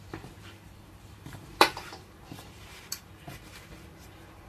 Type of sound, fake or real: fake